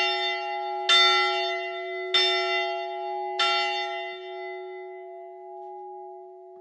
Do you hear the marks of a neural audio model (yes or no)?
no